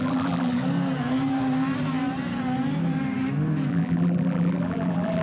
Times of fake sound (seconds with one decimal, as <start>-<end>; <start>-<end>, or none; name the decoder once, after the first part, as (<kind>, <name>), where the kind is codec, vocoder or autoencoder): 0.0-0.6 (vocoder, BigVGAN v2); 3.7-5.2